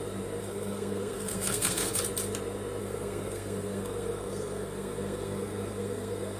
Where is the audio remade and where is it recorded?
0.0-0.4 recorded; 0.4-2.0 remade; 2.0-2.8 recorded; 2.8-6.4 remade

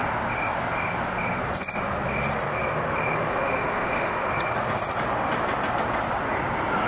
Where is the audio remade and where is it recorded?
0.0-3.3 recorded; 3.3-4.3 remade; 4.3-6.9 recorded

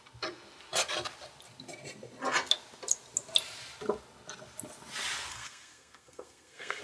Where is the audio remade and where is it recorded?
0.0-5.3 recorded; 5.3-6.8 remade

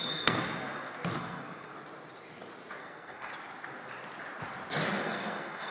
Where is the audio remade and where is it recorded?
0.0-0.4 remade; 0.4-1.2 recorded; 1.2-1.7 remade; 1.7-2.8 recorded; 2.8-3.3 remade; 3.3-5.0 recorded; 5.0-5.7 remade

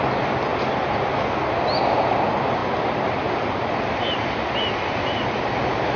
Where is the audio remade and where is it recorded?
0.0-0.5 recorded; 0.5-1.0 remade; 1.0-6.0 recorded

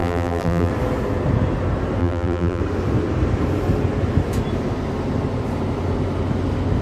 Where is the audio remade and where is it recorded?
0.0-0.7 remade; 0.7-2.0 recorded; 2.0-2.6 remade; 2.6-6.8 recorded

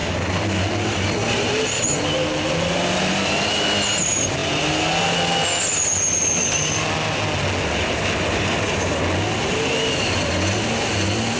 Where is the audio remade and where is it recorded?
0.0-11.4 recorded